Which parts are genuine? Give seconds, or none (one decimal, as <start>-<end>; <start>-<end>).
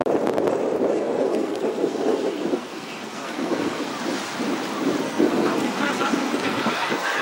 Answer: 0.0-0.9; 3.9-5.0